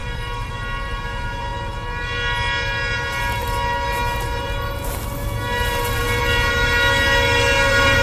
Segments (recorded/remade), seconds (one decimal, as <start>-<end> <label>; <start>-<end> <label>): 0.0-0.5 remade; 0.5-8.0 recorded